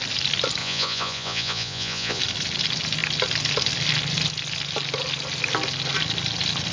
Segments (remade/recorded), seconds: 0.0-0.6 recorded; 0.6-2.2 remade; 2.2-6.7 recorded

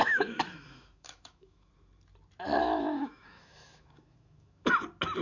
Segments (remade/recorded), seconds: 0.0-1.7 remade; 1.7-2.6 recorded; 2.6-4.7 remade; 4.7-5.2 recorded

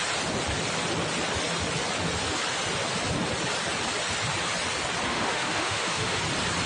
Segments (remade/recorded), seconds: 0.0-5.1 recorded; 5.1-6.2 remade; 6.2-6.7 recorded

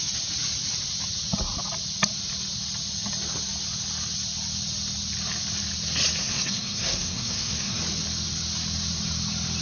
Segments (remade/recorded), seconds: 0.0-6.2 recorded; 6.2-7.8 remade; 7.8-9.6 recorded

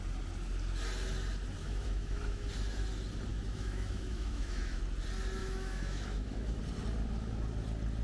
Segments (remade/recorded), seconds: 0.0-1.6 recorded; 1.6-2.5 remade; 2.5-3.3 recorded; 3.3-4.8 remade; 4.8-5.4 recorded; 5.4-6.6 remade; 6.6-8.0 recorded

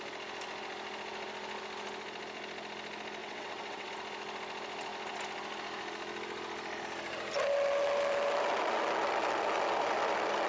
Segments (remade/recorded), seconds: 0.0-3.2 recorded; 3.2-3.9 remade; 3.9-10.5 recorded